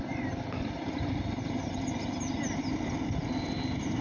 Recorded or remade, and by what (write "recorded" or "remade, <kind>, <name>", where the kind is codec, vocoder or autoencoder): recorded